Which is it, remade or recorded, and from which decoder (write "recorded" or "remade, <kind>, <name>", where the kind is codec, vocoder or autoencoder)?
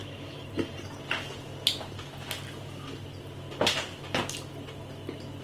recorded